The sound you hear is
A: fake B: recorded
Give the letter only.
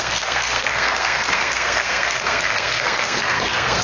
A